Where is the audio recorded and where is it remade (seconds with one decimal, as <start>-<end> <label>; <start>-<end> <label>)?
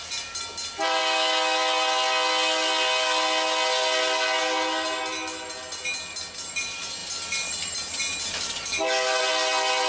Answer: 0.0-8.3 recorded; 8.3-9.2 remade; 9.2-9.9 recorded